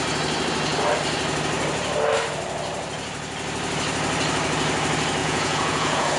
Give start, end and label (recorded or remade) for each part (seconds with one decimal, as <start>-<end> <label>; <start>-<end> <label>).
0.0-5.2 recorded; 5.2-6.2 remade